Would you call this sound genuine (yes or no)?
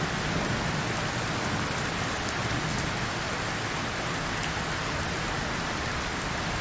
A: yes